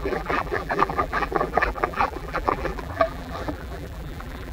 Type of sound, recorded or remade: remade